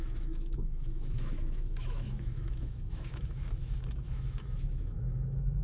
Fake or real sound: fake